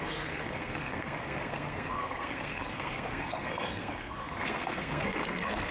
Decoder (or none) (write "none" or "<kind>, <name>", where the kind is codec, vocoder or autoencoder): codec, SNAC